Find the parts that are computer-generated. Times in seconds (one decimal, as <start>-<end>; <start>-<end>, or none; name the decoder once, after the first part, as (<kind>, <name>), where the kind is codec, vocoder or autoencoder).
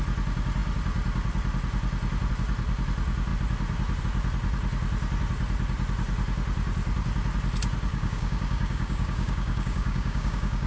7.9-10.7 (codec, DAC)